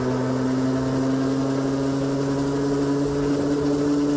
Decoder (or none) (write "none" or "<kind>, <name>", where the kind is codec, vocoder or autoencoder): none